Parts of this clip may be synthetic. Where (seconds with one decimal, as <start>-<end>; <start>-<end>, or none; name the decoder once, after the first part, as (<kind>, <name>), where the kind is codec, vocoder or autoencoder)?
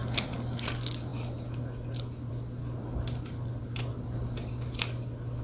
none